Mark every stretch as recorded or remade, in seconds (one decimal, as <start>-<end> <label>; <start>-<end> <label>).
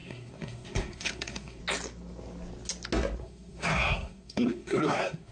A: 0.0-1.6 remade; 1.6-3.2 recorded; 3.2-5.3 remade